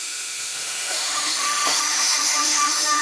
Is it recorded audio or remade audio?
remade